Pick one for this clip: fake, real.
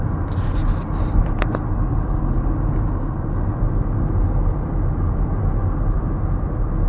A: real